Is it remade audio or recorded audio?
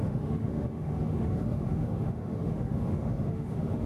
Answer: remade